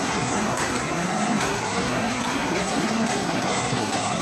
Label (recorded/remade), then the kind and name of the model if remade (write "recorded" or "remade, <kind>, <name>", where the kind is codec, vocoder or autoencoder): remade, codec, SNAC